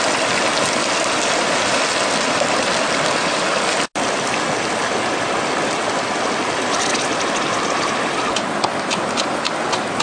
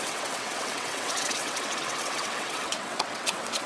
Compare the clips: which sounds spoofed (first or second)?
second